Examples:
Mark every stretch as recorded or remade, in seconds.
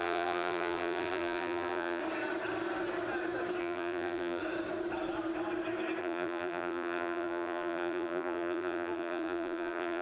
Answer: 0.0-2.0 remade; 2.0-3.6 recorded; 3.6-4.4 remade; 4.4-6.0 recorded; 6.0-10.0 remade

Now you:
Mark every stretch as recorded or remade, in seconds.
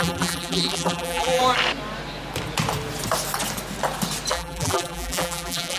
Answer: 0.0-1.4 remade; 1.4-4.3 recorded; 4.3-5.8 remade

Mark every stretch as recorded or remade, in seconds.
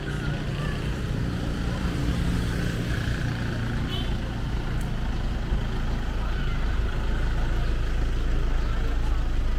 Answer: 0.0-0.5 recorded; 0.5-2.1 remade; 2.1-9.6 recorded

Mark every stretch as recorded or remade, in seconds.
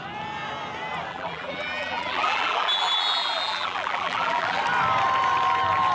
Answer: 0.0-1.1 recorded; 1.1-4.6 remade; 4.6-5.9 recorded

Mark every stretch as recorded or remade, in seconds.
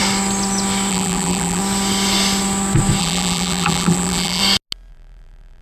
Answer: 0.0-0.9 recorded; 0.9-1.6 remade; 1.6-3.0 recorded; 3.0-4.4 remade; 4.4-4.9 recorded; 4.9-5.6 remade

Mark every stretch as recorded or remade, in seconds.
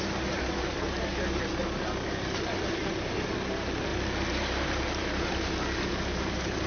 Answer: 0.0-1.1 recorded; 1.1-1.6 remade; 1.6-3.9 recorded; 3.9-5.9 remade; 5.9-6.7 recorded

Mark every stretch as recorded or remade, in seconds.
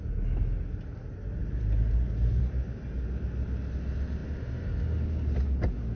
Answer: 0.0-1.4 recorded; 1.4-2.4 remade; 2.4-6.0 recorded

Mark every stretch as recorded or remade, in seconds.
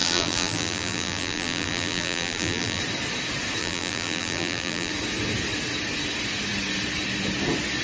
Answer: 0.0-2.8 remade; 2.8-3.6 recorded; 3.6-4.9 remade; 4.9-7.8 recorded